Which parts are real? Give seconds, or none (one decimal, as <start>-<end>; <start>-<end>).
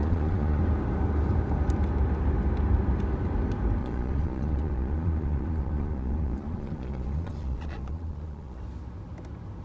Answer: 0.6-3.8; 8.6-9.6